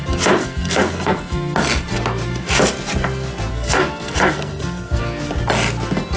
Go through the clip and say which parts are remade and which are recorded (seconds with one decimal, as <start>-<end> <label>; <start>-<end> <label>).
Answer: 0.0-0.4 recorded; 0.4-1.6 remade; 1.6-3.5 recorded; 3.5-5.0 remade; 5.0-6.2 recorded